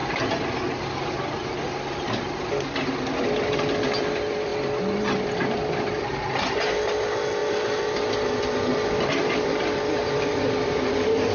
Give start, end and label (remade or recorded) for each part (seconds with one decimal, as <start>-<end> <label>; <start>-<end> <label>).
0.0-11.3 recorded